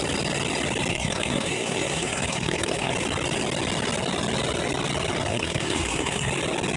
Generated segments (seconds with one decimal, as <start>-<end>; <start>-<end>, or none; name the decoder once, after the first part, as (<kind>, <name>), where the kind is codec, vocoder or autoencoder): 0.9-2.9 (codec, SNAC); 5.3-6.3